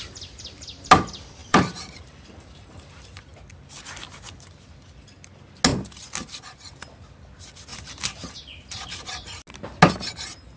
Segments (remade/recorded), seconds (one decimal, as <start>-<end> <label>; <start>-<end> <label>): 0.0-1.4 recorded; 1.4-3.2 remade; 3.2-7.7 recorded; 7.7-8.4 remade; 8.4-10.6 recorded